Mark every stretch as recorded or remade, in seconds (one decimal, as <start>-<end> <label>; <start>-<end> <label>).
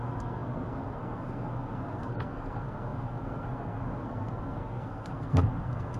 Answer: 0.0-6.0 remade